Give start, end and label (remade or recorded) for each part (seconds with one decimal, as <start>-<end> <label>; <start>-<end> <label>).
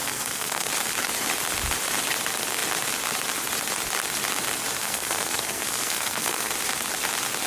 0.0-0.7 remade; 0.7-4.8 recorded; 4.8-6.5 remade; 6.5-7.5 recorded